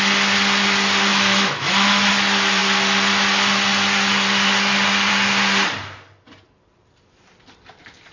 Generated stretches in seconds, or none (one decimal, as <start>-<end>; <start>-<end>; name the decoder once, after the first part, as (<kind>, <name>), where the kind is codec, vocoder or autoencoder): 1.1-2.1 (autoencoder, DAC-VAE)